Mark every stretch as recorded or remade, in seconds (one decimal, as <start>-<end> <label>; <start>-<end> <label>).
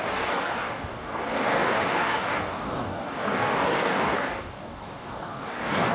0.0-5.9 remade